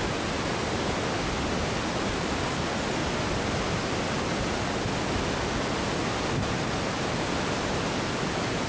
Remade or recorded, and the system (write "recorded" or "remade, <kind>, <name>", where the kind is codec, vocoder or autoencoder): recorded